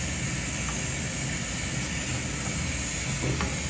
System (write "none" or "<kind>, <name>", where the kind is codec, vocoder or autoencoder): none